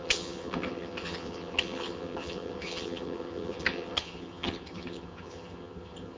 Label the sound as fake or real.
fake